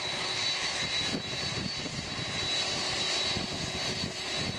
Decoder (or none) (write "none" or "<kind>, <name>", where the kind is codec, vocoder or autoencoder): none